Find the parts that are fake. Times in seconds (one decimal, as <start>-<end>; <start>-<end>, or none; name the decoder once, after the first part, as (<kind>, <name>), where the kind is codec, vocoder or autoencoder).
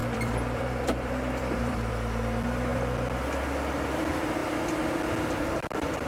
0.0-1.9 (vocoder, BigVGAN v2)